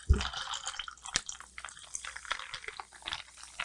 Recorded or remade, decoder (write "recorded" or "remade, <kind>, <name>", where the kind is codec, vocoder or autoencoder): remade, vocoder, BigVGAN v2